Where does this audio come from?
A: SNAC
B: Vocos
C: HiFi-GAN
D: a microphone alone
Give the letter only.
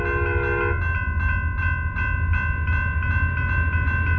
D